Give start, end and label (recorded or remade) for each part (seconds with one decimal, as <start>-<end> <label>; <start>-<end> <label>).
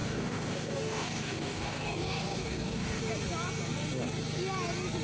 0.0-3.0 remade; 3.0-5.0 recorded